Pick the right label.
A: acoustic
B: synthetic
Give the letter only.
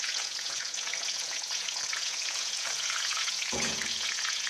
B